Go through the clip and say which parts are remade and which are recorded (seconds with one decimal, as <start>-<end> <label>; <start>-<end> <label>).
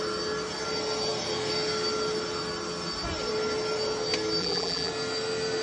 0.0-4.4 recorded; 4.4-4.9 remade; 4.9-5.6 recorded